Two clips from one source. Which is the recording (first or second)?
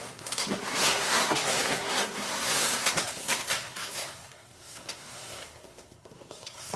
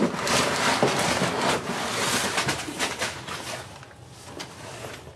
second